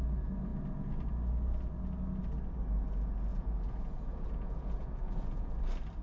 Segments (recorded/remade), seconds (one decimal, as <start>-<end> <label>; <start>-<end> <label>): 0.0-3.3 recorded; 3.3-5.5 remade; 5.5-6.0 recorded

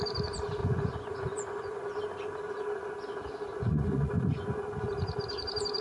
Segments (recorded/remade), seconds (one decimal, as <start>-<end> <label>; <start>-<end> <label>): 0.0-0.6 recorded; 0.6-2.0 remade; 2.0-3.5 recorded; 3.5-4.1 remade; 4.1-5.8 recorded

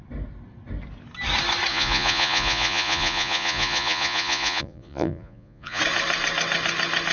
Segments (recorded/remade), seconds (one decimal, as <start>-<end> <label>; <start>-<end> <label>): 0.0-1.7 recorded; 1.7-5.8 remade; 5.8-7.1 recorded

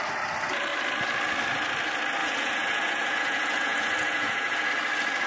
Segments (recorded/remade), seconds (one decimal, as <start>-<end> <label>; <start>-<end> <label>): 0.0-2.2 recorded; 2.2-4.7 remade; 4.7-5.3 recorded

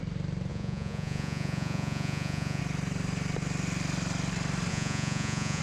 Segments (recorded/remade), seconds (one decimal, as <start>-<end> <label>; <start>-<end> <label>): 0.0-0.5 recorded; 0.5-2.6 remade; 2.6-4.7 recorded; 4.7-5.6 remade

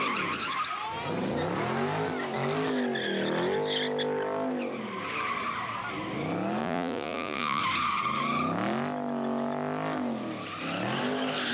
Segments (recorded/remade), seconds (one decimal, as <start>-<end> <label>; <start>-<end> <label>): 0.0-6.6 recorded; 6.6-7.6 remade; 7.6-11.5 recorded